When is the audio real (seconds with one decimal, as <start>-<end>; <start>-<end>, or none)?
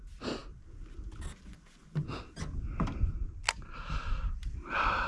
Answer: 0.0-5.1